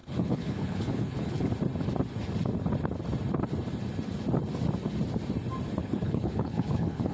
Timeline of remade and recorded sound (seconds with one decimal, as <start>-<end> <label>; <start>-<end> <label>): 0.0-1.5 remade; 1.5-5.8 recorded; 5.8-7.1 remade